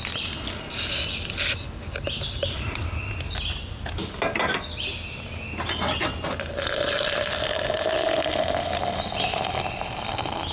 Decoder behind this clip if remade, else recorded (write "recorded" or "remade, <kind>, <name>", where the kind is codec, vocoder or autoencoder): recorded